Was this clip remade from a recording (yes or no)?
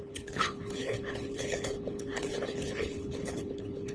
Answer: yes